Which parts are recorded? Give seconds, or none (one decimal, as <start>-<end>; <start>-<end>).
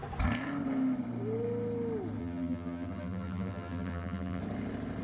0.0-2.2; 4.4-5.0